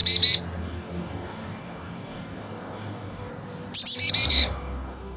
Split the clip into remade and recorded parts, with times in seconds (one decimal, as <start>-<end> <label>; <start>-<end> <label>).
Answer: 0.0-0.6 recorded; 0.6-3.3 remade; 3.3-4.3 recorded; 4.3-5.2 remade